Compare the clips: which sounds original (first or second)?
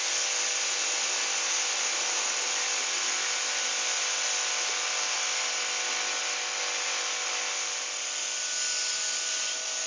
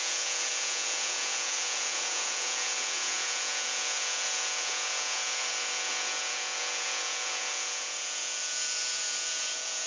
first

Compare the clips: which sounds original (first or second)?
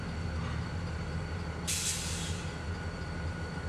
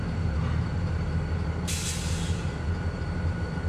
first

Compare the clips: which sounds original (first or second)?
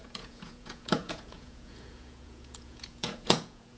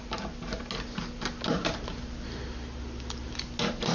second